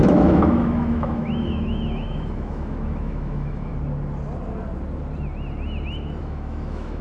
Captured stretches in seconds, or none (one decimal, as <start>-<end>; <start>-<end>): 3.7-6.2

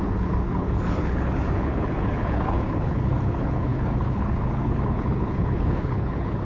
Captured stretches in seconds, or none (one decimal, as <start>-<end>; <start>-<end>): none